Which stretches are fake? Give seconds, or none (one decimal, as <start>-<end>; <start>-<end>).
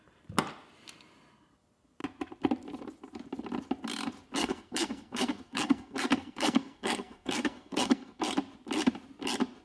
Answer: 4.4-8.2